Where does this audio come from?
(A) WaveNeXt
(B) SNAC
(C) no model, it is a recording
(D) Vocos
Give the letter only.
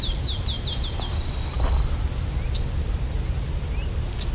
C